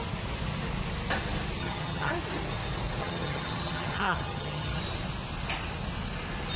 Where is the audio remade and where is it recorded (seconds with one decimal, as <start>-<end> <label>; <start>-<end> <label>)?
0.0-1.6 recorded; 1.6-2.1 remade; 2.1-3.0 recorded; 3.0-4.8 remade; 4.8-6.6 recorded